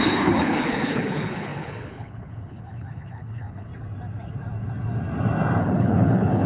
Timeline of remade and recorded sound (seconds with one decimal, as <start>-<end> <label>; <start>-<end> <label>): 0.0-3.7 remade; 3.7-5.6 recorded; 5.6-6.5 remade